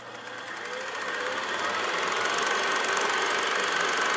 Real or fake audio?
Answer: real